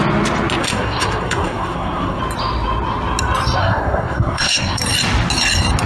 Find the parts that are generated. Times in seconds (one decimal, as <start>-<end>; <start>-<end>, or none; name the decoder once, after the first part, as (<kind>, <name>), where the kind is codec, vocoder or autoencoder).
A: 0.6-2.2 (codec, SNAC); 3.6-4.8